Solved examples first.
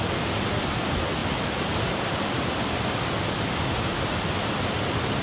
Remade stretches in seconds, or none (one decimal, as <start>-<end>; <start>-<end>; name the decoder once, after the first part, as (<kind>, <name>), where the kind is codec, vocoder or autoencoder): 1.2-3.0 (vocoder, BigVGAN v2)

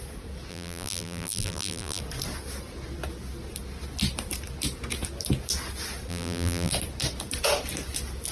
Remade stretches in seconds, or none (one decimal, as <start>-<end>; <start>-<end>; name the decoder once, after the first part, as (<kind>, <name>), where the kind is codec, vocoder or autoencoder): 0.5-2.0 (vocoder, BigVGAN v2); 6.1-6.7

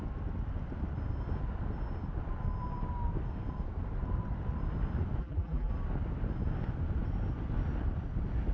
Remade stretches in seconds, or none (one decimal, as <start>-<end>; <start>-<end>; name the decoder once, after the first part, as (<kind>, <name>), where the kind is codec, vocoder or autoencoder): 5.2-5.7 (vocoder, BigVGAN v2)

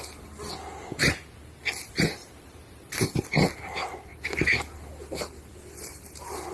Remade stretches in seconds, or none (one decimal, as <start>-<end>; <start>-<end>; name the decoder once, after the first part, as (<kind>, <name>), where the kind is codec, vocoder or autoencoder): 2.2-3.3 (vocoder, BigVGAN v2)

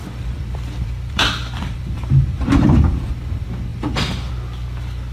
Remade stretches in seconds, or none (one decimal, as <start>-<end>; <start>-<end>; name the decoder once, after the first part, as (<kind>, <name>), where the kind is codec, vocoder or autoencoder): 0.0-3.1 (vocoder, BigVGAN v2); 3.7-4.3

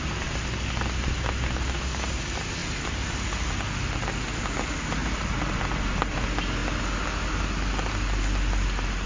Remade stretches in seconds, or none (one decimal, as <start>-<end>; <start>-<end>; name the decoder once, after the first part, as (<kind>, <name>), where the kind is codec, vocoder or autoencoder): 5.0-5.5 (vocoder, BigVGAN v2)